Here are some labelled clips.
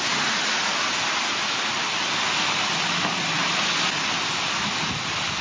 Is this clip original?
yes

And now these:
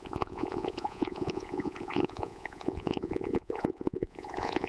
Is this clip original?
no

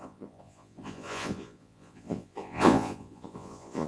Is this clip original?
no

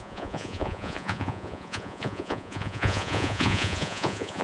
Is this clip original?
no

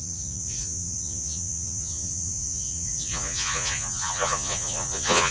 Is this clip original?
no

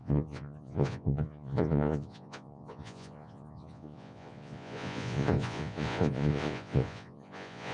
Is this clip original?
no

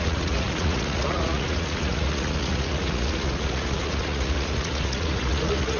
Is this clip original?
no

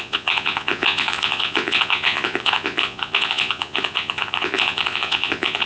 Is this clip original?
no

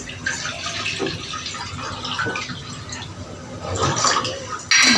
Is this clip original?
yes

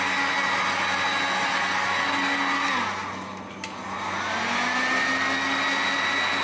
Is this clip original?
yes